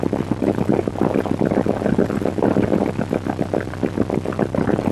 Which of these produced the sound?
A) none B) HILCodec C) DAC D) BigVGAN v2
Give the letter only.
A